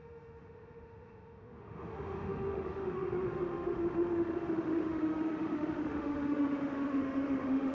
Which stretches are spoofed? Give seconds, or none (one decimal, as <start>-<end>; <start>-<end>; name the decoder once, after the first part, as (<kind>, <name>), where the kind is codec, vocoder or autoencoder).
0.0-7.7 (autoencoder, DAC-VAE)